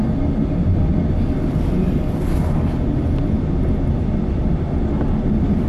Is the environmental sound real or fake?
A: real